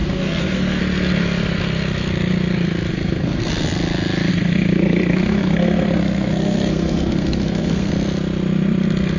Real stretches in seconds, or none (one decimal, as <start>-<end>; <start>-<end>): 0.8-2.9; 3.5-4.3; 7.9-9.2